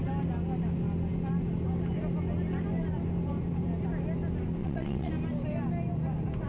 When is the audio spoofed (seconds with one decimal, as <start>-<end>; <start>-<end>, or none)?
4.6-5.1